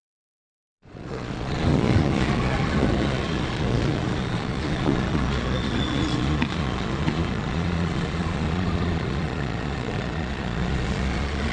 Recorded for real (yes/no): no